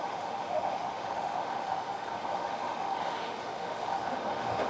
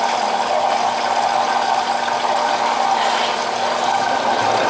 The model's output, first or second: first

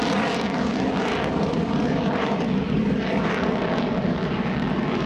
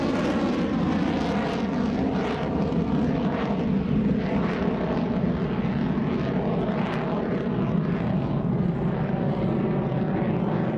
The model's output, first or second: first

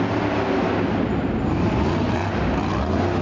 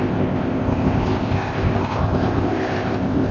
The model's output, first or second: second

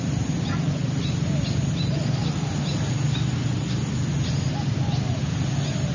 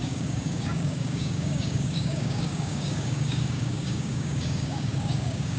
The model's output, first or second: second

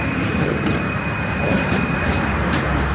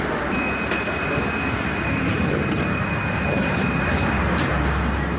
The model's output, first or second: first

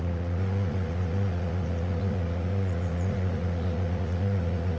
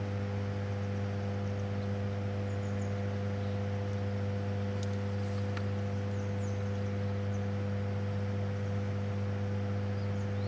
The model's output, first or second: first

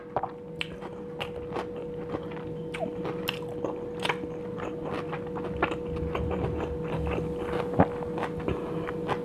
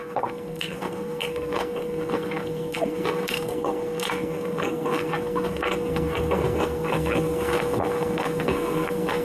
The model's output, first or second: second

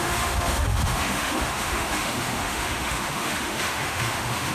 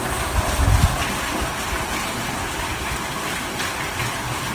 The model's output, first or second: first